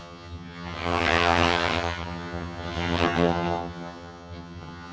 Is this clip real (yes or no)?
no